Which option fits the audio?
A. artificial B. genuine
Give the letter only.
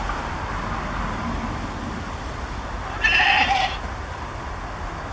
B